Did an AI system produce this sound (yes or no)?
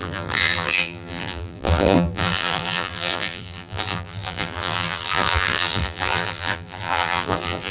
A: yes